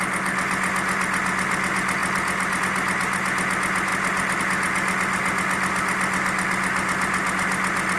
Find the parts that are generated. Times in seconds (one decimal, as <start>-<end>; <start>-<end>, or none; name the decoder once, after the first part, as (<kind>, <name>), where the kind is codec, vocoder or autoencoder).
none

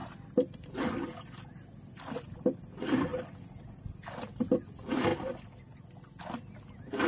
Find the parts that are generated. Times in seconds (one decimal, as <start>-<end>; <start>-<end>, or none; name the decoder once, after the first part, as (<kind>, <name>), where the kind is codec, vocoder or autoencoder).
0.0-0.8 (vocoder, BigVGAN v2)

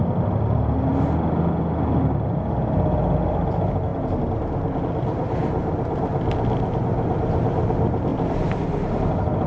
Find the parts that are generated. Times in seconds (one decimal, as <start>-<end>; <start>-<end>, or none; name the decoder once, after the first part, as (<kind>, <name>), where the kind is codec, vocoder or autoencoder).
8.1-8.6 (vocoder, BigVGAN v2)

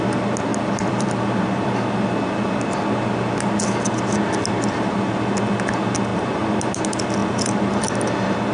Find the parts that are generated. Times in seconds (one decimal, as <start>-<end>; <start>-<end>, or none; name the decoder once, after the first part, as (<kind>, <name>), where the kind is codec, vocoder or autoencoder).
0.5-2.6 (vocoder, BigVGAN v2); 6.1-6.8

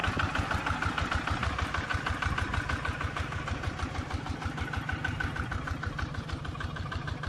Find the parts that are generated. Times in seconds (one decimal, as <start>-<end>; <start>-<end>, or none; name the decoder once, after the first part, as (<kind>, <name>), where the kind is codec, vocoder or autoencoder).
1.1-7.3 (vocoder, BigVGAN v2)